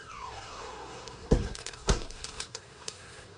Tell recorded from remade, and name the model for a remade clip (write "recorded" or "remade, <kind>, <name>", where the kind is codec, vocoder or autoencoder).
remade, codec, SNAC